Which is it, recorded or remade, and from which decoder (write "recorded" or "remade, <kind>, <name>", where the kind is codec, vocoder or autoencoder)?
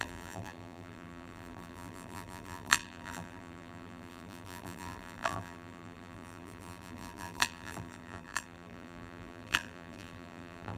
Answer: remade, vocoder, BigVGAN v2